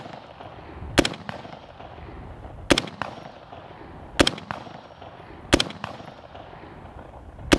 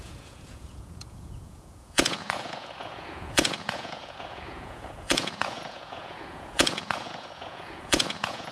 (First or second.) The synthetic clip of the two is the second